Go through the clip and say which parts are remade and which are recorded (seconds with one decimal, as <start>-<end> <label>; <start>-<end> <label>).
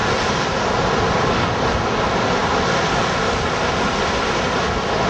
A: 0.0-5.1 recorded